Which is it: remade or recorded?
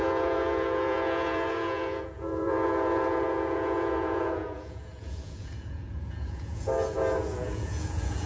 remade